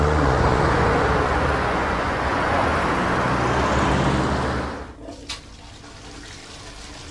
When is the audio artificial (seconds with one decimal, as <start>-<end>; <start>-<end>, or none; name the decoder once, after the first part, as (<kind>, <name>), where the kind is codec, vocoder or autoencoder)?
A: 0.0-2.7 (vocoder, Vocos)